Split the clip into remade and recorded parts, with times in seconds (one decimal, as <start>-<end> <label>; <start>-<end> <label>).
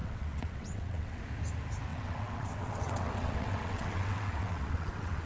0.0-1.2 remade; 1.2-1.9 recorded; 1.9-5.3 remade